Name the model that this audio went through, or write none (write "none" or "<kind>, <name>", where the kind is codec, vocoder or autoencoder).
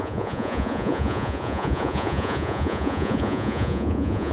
vocoder, Vocos